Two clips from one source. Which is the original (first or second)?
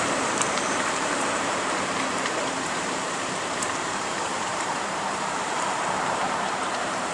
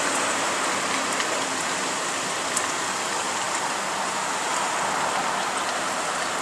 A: second